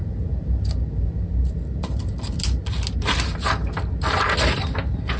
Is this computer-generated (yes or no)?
no